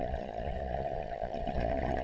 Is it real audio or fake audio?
fake